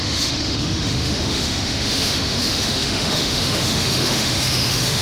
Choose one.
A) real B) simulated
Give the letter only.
B